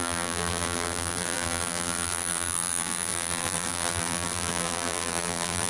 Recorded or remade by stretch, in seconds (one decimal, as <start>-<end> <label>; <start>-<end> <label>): 0.0-5.7 remade